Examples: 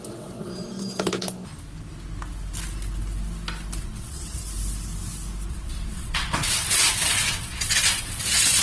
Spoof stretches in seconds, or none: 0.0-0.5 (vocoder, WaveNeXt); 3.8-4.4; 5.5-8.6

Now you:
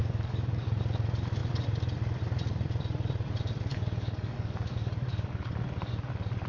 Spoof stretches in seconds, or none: 0.0-0.8 (codec, DAC); 3.7-5.5

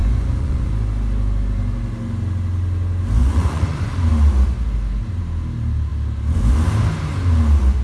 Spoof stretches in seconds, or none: 0.0-0.7 (vocoder, Vocos); 3.2-3.9

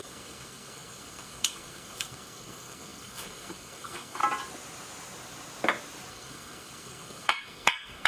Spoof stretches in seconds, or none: 0.0-4.2 (codec, SNAC); 6.1-8.1